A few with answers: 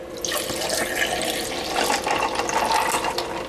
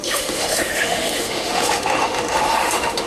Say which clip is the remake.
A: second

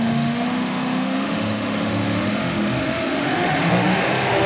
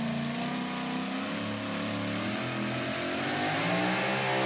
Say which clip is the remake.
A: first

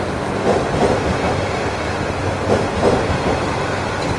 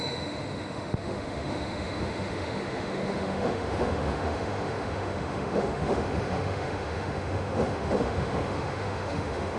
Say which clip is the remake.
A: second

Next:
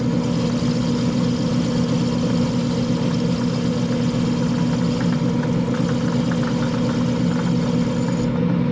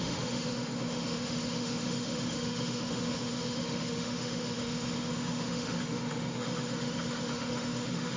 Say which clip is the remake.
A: second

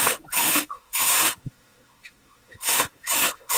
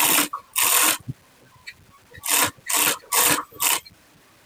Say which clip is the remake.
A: first